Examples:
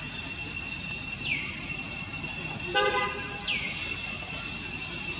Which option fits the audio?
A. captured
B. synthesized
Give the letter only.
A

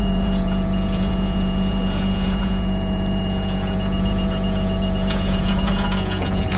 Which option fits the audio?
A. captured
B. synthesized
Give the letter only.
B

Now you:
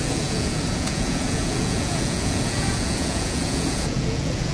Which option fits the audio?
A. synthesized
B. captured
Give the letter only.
A